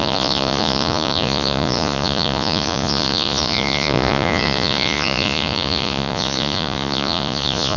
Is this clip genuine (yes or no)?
no